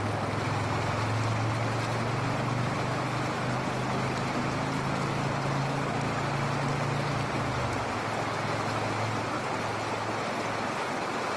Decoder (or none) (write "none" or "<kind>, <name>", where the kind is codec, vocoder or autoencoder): none